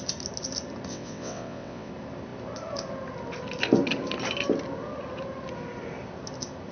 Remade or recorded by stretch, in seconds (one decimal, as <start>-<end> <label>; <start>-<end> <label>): 0.0-0.9 recorded; 0.9-1.9 remade; 1.9-6.7 recorded